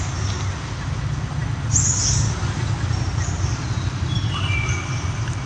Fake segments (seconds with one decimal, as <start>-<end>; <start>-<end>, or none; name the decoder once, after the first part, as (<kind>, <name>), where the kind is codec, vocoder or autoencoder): none